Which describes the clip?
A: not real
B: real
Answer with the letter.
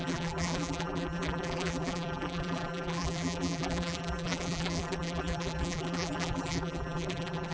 A